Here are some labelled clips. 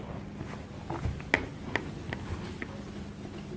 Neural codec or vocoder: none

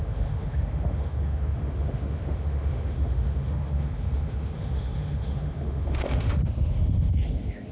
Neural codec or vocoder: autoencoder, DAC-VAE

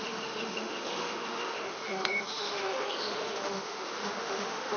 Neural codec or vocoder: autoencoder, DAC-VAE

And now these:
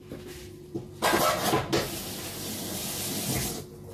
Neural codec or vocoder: none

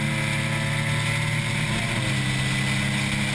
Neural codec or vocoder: none